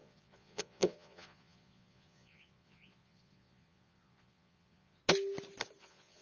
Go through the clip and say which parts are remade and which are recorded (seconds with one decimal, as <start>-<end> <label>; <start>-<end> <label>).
0.0-5.0 remade; 5.0-5.8 recorded; 5.8-6.2 remade

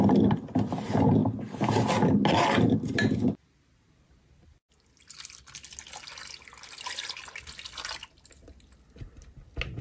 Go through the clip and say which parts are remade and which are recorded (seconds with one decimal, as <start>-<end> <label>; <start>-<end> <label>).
0.0-9.8 recorded

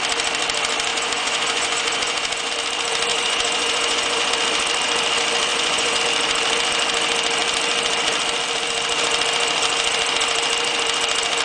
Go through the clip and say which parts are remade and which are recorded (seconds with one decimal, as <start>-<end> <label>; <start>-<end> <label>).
0.0-0.9 recorded; 0.9-2.5 remade; 2.5-3.1 recorded; 3.1-4.3 remade; 4.3-5.5 recorded; 5.5-6.0 remade; 6.0-11.4 recorded

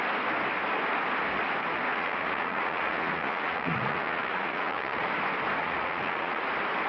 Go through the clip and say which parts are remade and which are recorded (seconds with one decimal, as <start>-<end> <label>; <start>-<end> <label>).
0.0-1.9 recorded; 1.9-5.1 remade; 5.1-5.6 recorded; 5.6-6.4 remade; 6.4-6.9 recorded

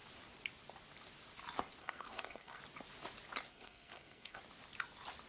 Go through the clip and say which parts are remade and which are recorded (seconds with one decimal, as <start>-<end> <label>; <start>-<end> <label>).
0.0-1.8 recorded; 1.8-2.6 remade; 2.6-3.5 recorded; 3.5-4.4 remade; 4.4-5.3 recorded

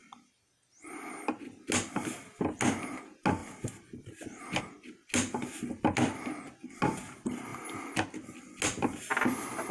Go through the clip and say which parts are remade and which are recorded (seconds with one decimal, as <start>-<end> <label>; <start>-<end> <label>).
0.0-3.4 recorded; 3.4-4.6 remade; 4.6-9.7 recorded